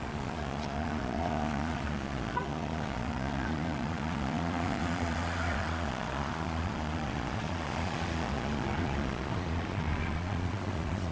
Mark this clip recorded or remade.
remade